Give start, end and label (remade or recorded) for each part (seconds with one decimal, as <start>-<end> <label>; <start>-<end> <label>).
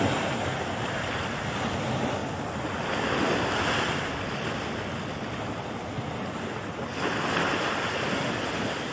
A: 0.0-8.9 recorded